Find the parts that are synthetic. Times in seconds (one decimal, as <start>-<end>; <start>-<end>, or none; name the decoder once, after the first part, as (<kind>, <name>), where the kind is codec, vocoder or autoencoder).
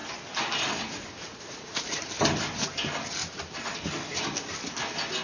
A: 0.0-2.0 (vocoder, BigVGAN v2)